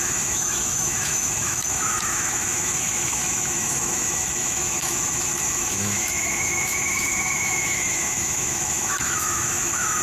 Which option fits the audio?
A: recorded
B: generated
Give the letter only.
B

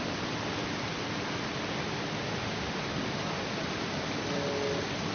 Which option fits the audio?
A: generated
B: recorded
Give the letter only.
B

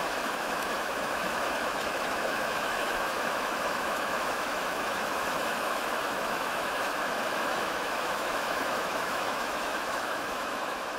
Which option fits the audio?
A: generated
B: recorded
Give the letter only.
A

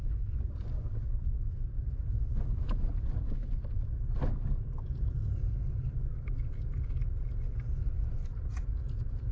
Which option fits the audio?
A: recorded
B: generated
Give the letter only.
A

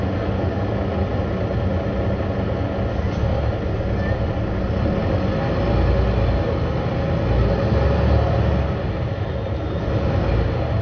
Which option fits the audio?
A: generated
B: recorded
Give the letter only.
B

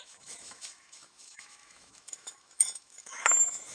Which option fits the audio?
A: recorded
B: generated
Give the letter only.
B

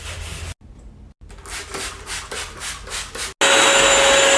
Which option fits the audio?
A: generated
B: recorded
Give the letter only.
B